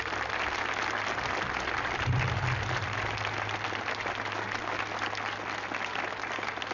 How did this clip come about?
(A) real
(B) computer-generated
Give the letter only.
A